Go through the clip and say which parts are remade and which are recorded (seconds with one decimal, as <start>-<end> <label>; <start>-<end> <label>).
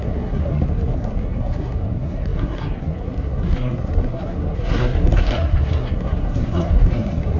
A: 0.0-7.4 remade